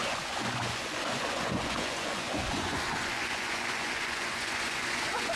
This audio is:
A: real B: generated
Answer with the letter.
B